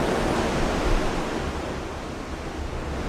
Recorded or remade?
recorded